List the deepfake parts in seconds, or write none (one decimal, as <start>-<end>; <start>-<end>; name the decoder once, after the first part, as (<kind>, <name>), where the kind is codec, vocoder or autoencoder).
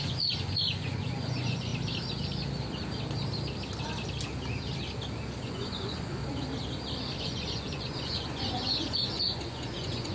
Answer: 0.0-1.7 (vocoder, Vocos); 5.4-6.2; 7.2-10.1